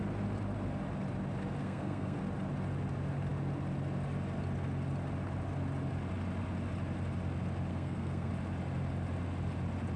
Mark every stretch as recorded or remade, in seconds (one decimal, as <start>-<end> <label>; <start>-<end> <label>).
0.0-1.6 recorded; 1.6-2.2 remade; 2.2-7.7 recorded; 7.7-8.3 remade; 8.3-10.0 recorded